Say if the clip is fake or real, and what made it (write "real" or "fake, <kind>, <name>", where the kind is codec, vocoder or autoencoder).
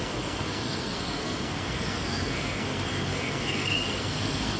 fake, codec, SNAC